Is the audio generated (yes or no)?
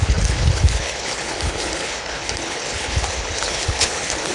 yes